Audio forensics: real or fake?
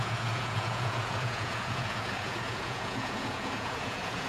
fake